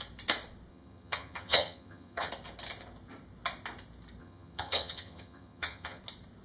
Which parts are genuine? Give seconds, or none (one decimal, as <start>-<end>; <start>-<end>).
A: 0.0-0.7; 2.3-4.2; 6.0-6.4